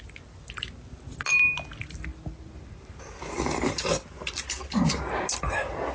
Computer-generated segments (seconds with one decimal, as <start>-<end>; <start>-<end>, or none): none